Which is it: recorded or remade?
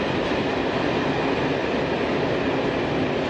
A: recorded